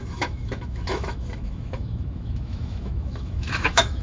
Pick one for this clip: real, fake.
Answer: fake